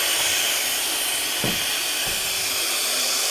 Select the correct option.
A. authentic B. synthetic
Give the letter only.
A